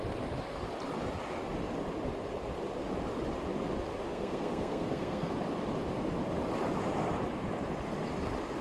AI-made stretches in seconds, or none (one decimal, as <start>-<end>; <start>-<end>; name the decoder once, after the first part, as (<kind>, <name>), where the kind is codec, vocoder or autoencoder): 4.1-5.3 (codec, SNAC)